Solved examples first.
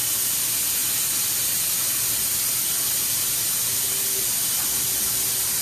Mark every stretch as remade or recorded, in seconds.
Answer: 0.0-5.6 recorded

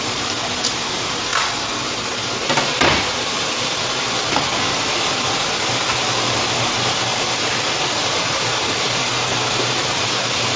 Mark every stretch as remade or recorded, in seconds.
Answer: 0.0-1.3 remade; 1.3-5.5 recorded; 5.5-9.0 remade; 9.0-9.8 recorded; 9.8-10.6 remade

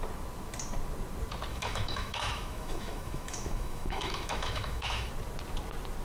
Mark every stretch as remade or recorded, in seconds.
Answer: 0.0-1.5 recorded; 1.5-5.1 remade; 5.1-6.0 recorded

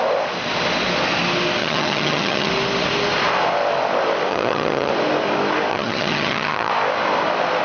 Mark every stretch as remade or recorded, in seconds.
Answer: 0.0-1.6 recorded; 1.6-2.5 remade; 2.5-4.3 recorded; 4.3-4.9 remade; 4.9-5.7 recorded; 5.7-6.7 remade; 6.7-7.6 recorded

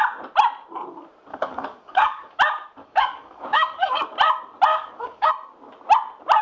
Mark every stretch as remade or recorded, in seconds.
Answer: 0.0-1.3 recorded; 1.3-2.4 remade; 2.4-2.8 recorded; 2.8-4.0 remade; 4.0-4.7 recorded; 4.7-5.3 remade; 5.3-6.4 recorded

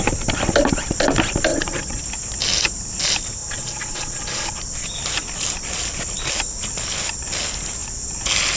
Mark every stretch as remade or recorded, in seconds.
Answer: 0.0-1.5 recorded; 1.5-2.0 remade; 2.0-3.4 recorded; 3.4-4.6 remade; 4.6-8.6 recorded

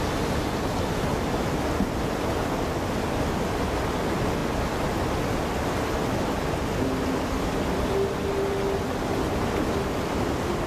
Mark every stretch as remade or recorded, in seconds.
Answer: 0.0-10.7 recorded